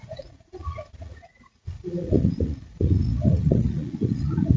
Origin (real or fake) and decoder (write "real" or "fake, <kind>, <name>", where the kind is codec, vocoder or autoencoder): fake, vocoder, Vocos